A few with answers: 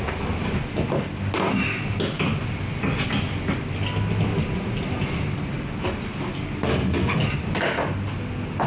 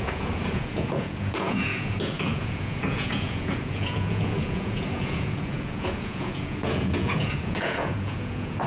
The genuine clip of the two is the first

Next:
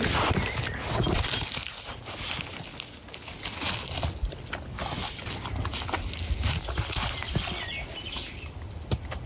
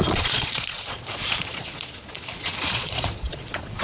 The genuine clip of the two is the first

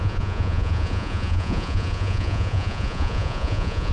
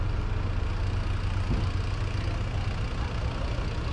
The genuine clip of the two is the second